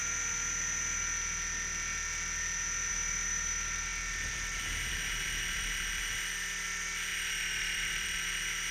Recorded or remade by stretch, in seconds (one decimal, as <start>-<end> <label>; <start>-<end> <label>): 0.0-2.9 recorded; 2.9-8.7 remade